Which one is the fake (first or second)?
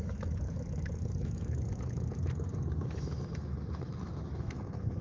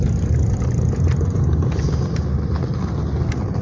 first